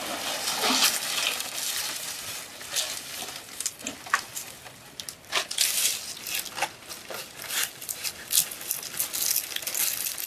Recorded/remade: recorded